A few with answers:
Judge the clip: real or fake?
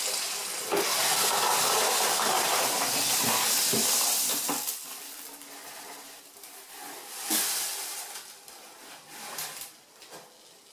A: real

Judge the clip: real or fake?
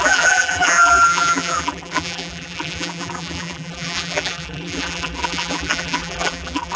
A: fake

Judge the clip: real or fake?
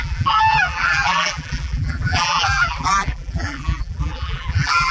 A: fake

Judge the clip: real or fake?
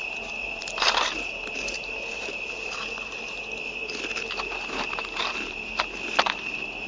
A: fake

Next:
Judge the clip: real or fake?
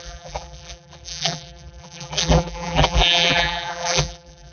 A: fake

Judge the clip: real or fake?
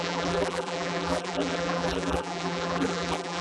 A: fake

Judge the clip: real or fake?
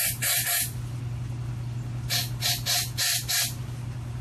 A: real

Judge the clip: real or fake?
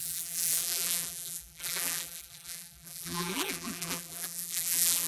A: fake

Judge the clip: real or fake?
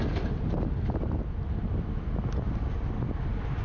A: real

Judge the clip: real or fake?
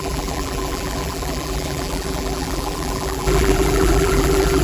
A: fake